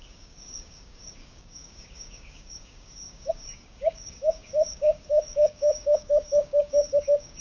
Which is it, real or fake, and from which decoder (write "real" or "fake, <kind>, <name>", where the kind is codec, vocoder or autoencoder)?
fake, codec, DAC